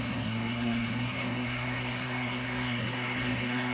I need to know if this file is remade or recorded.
remade